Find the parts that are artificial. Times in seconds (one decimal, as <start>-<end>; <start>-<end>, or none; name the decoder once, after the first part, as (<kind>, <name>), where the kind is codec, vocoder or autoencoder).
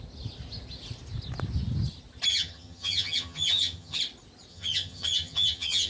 2.3-4.0 (vocoder, HiFi-GAN); 4.5-5.9